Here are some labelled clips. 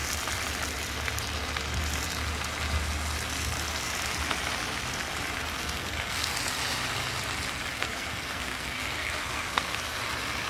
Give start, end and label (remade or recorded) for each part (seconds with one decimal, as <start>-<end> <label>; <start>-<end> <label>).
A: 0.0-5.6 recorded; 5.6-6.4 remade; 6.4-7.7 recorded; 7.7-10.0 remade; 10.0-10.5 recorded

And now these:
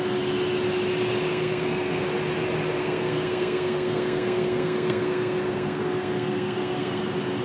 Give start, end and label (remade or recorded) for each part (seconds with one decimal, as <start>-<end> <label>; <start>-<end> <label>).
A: 0.0-1.3 recorded; 1.3-2.0 remade; 2.0-2.8 recorded; 2.8-7.0 remade; 7.0-7.4 recorded

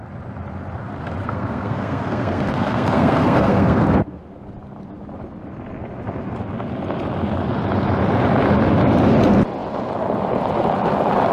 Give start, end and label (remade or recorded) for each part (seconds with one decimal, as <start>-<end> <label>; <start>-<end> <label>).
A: 0.0-1.2 recorded; 1.2-4.2 remade; 4.2-11.3 recorded

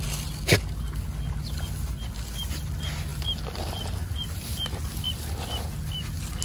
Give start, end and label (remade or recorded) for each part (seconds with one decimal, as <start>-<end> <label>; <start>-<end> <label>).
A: 0.0-6.4 recorded

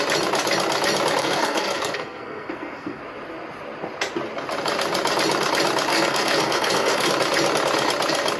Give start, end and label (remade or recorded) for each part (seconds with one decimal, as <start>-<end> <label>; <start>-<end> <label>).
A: 0.0-1.2 recorded; 1.2-3.0 remade; 3.0-5.9 recorded; 5.9-7.1 remade; 7.1-8.4 recorded